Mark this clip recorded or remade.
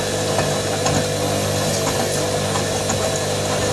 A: recorded